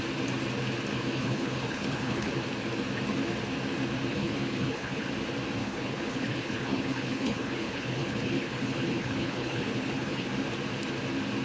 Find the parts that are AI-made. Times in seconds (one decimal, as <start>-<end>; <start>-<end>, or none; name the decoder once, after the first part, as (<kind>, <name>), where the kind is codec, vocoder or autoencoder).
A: 0.9-2.3 (codec, HILCodec); 4.1-5.1; 5.6-10.3